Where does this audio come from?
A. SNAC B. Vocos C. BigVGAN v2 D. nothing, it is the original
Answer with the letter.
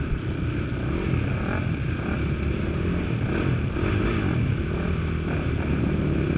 D